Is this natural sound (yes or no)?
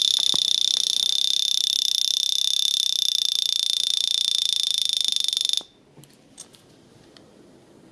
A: yes